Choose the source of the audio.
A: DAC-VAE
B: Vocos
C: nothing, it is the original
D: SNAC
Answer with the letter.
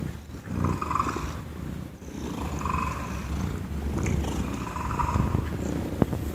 C